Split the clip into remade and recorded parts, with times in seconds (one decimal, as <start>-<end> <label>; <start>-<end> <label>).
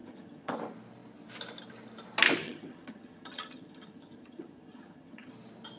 0.0-0.5 remade; 0.5-2.4 recorded; 2.4-5.3 remade; 5.3-5.8 recorded